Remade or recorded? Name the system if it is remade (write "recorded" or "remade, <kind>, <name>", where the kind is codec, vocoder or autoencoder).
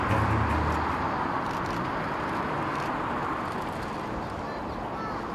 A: recorded